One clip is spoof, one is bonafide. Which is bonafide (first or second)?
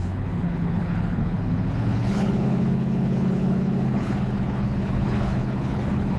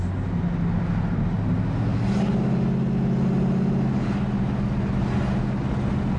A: second